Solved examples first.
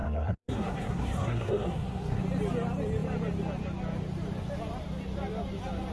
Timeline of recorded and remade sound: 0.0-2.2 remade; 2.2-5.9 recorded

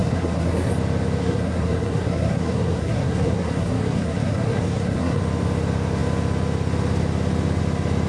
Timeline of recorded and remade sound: 0.0-0.7 remade; 0.7-1.2 recorded; 1.2-5.2 remade; 5.2-8.1 recorded